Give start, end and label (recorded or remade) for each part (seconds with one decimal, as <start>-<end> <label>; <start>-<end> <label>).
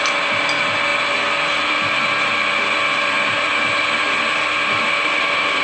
0.0-5.6 recorded